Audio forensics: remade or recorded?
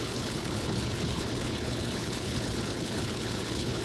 remade